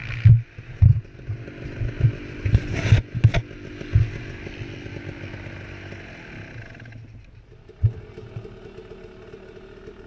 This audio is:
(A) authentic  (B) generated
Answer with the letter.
A